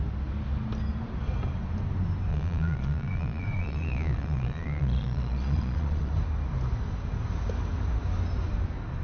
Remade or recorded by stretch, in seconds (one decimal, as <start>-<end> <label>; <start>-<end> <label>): 0.0-2.3 recorded; 2.3-6.1 remade; 6.1-9.0 recorded